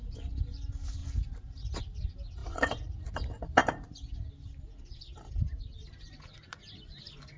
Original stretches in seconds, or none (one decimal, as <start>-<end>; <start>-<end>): 0.0-2.4; 3.0-7.4